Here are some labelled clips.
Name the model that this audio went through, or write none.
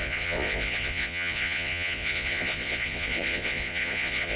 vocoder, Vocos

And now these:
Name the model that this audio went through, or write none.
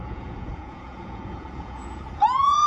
vocoder, Vocos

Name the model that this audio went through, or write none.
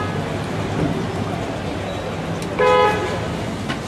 none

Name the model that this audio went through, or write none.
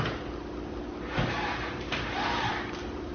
none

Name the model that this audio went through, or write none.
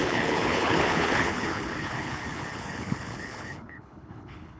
codec, HILCodec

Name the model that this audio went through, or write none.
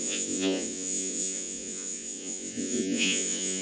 vocoder, Vocos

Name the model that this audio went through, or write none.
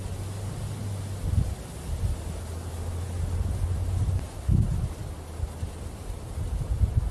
none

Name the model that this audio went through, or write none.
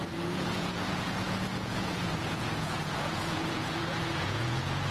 vocoder, Vocos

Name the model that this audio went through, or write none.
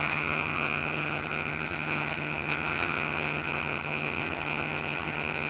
vocoder, HiFi-GAN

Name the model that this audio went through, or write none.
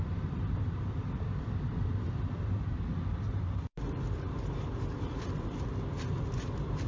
none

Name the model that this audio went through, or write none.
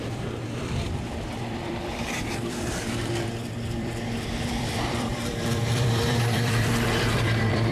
vocoder, BigVGAN v2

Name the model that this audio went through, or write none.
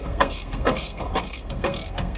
codec, SNAC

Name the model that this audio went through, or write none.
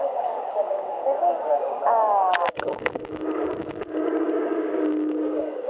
codec, DAC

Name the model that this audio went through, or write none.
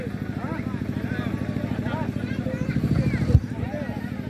none